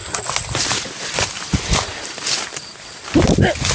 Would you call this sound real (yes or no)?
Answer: yes